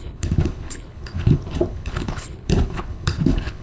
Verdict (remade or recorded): remade